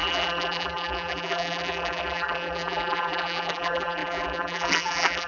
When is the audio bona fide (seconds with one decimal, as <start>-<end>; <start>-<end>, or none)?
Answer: none